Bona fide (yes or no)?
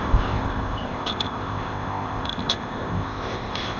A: no